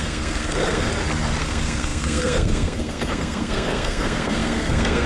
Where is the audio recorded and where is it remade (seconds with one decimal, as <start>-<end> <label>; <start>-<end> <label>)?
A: 0.0-0.9 remade; 0.9-1.4 recorded; 1.4-5.1 remade